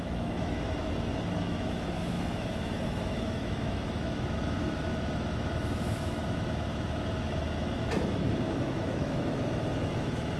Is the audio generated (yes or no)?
yes